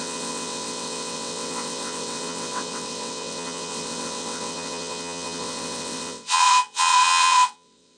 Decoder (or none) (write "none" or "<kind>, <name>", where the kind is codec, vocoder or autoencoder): vocoder, WaveNeXt